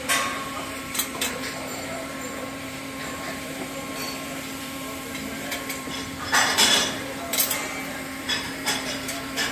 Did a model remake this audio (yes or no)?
yes